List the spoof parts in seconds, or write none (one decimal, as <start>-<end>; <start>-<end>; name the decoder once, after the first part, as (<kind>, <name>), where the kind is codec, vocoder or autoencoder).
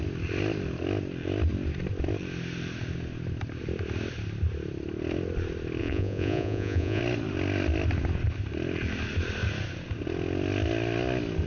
5.8-7.0 (vocoder, Vocos)